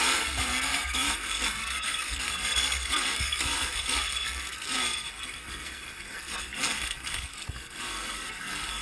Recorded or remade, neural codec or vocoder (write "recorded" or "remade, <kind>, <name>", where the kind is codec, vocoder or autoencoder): remade, codec, SNAC